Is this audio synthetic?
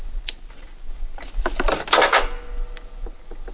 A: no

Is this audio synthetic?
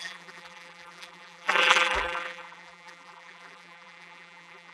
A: yes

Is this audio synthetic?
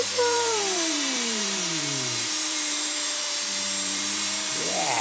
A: yes